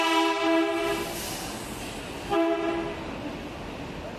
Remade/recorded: recorded